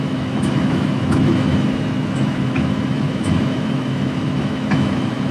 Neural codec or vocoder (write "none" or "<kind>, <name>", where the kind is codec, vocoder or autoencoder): autoencoder, DAC-VAE